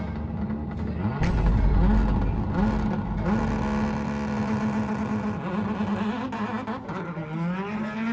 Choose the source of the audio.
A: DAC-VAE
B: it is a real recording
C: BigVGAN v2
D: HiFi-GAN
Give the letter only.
B